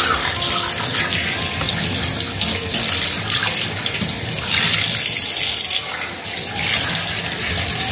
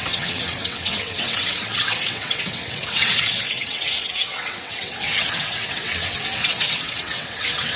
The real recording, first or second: first